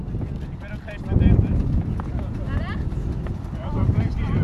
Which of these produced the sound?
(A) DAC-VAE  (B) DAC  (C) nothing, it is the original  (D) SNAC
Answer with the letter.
C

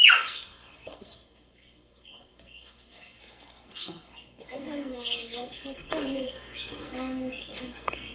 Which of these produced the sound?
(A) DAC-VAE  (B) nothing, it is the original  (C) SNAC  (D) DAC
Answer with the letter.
C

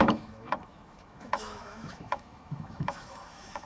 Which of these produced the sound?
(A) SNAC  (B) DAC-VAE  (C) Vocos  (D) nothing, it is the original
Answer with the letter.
B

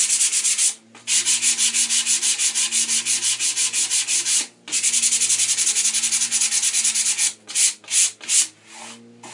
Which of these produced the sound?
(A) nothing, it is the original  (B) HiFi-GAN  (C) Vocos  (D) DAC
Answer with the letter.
A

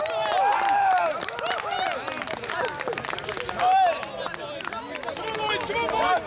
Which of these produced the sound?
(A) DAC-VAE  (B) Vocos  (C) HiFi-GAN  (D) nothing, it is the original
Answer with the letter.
D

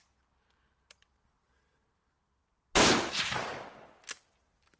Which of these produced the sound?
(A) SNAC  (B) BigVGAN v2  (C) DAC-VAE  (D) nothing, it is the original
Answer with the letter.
D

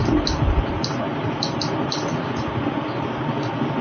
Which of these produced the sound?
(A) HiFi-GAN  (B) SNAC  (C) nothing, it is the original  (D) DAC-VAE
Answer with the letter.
C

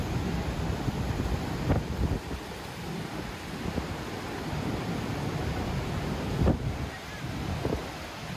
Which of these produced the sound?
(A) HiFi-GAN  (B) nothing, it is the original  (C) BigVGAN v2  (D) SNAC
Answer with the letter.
C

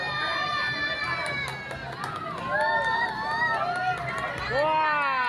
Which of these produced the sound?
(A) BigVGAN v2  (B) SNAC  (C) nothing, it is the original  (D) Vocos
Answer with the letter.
C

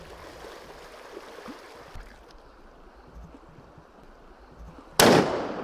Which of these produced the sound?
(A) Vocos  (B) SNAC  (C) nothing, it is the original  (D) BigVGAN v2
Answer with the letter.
C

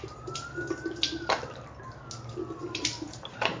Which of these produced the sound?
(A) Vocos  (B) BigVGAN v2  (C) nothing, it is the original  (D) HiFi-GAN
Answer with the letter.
C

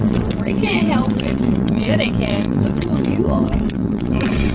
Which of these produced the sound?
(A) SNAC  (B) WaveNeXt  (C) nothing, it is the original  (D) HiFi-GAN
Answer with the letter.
B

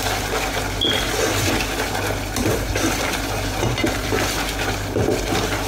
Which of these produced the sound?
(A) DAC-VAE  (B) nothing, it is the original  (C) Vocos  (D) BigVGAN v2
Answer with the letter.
B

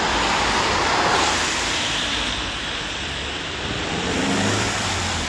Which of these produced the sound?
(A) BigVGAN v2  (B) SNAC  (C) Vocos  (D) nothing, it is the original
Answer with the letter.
A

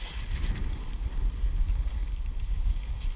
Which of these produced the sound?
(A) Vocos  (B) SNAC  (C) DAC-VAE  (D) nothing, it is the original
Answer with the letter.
D